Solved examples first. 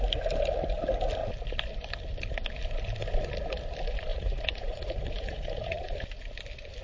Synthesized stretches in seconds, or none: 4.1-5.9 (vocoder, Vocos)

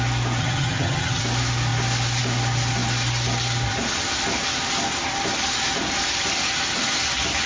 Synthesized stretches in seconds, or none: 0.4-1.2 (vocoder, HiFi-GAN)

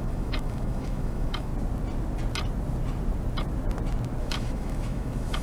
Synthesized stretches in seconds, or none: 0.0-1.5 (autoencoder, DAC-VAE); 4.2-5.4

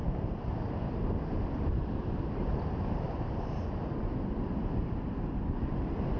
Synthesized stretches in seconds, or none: 0.0-2.5 (vocoder, BigVGAN v2)